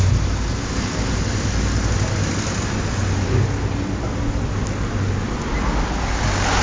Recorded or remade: recorded